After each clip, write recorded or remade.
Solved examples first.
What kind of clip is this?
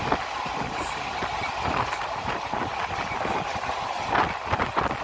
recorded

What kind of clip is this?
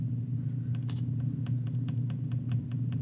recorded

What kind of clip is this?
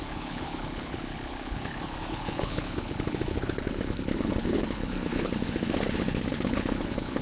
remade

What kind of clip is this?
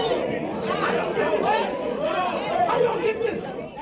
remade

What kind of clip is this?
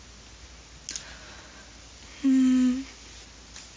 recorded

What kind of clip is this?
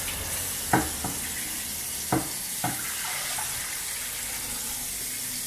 recorded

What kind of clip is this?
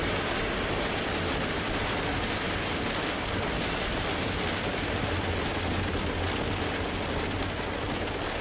recorded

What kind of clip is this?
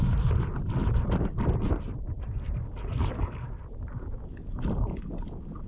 recorded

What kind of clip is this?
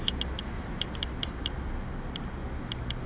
recorded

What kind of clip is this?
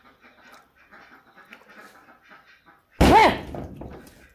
recorded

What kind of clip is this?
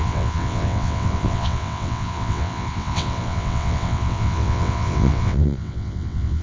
remade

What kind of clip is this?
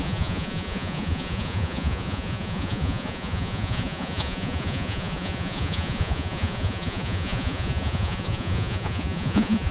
remade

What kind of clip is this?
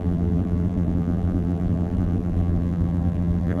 remade